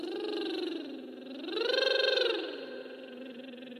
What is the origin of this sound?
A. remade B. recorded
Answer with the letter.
B